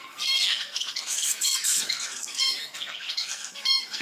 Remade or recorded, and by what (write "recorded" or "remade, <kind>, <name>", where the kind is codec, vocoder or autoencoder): remade, codec, SNAC